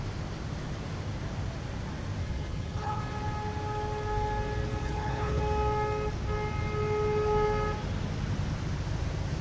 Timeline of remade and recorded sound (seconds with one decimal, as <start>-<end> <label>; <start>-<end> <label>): 0.0-2.2 recorded; 2.2-3.0 remade; 3.0-4.8 recorded; 4.8-5.4 remade; 5.4-9.4 recorded